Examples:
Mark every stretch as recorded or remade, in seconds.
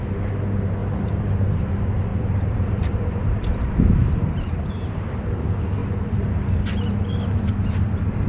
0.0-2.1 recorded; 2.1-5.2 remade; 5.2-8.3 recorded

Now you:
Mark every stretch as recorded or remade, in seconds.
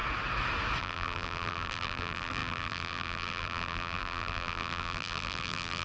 0.0-0.8 recorded; 0.8-5.8 remade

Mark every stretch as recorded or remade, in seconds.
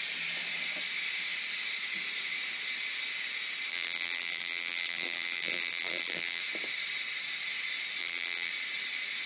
0.0-3.7 recorded; 3.7-6.4 remade; 6.4-8.0 recorded; 8.0-8.5 remade; 8.5-9.3 recorded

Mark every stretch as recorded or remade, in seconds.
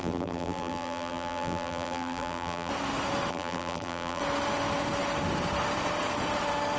0.0-2.7 remade; 2.7-3.3 recorded; 3.3-4.2 remade; 4.2-6.8 recorded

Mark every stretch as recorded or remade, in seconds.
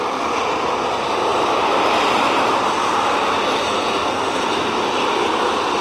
0.0-1.3 recorded; 1.3-2.8 remade; 2.8-5.8 recorded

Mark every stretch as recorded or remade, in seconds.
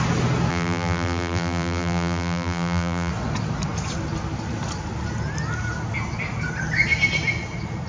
0.0-0.5 recorded; 0.5-3.1 remade; 3.1-7.9 recorded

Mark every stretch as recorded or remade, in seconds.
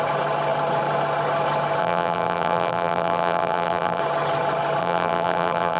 0.0-1.8 recorded; 1.8-4.0 remade; 4.0-4.8 recorded; 4.8-5.8 remade